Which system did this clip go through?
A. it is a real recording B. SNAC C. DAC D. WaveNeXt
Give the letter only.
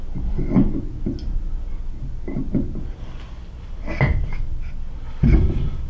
A